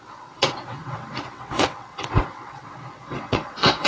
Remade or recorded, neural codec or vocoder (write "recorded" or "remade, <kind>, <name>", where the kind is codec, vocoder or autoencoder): remade, vocoder, WaveNeXt